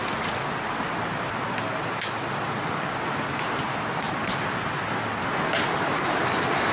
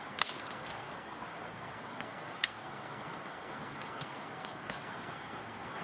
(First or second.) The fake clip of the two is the second